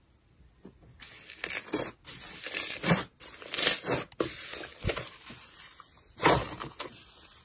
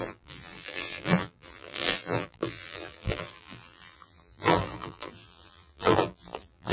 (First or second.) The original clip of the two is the first